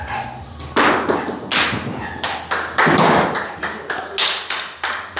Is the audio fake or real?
real